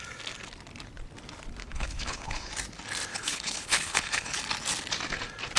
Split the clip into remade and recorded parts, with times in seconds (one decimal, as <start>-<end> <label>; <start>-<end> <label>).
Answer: 0.0-1.6 recorded; 1.6-2.5 remade; 2.5-3.1 recorded; 3.1-4.4 remade; 4.4-5.6 recorded

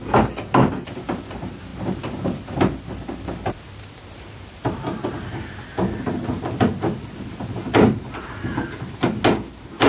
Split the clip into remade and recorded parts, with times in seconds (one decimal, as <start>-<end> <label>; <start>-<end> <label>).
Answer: 0.0-9.9 recorded

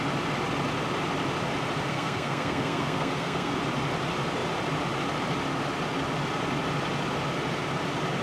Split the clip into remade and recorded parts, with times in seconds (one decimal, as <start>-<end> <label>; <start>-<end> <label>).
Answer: 0.0-1.9 recorded; 1.9-3.6 remade; 3.6-8.2 recorded

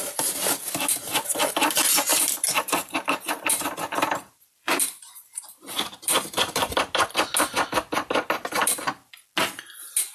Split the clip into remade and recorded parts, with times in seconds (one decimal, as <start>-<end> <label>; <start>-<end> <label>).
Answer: 0.0-2.1 recorded; 2.1-6.8 remade; 6.8-8.6 recorded; 8.6-9.1 remade; 9.1-10.1 recorded

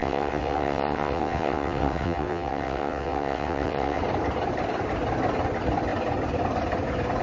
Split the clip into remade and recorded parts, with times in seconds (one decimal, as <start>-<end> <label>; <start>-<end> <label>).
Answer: 0.0-4.0 remade; 4.0-7.2 recorded

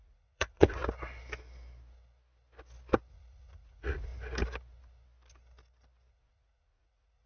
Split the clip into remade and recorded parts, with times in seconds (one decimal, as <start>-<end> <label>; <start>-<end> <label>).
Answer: 0.0-0.8 remade; 0.8-3.1 recorded; 3.1-4.1 remade; 4.1-6.1 recorded; 6.1-7.3 remade

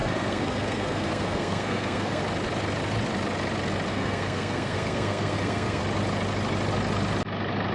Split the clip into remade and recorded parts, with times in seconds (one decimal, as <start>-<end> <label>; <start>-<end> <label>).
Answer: 0.0-2.2 remade; 2.2-3.9 recorded; 3.9-5.8 remade; 5.8-7.7 recorded